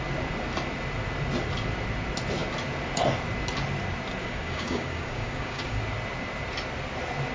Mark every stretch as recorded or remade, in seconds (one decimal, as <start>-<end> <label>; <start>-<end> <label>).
0.0-4.2 recorded; 4.2-5.8 remade; 5.8-7.3 recorded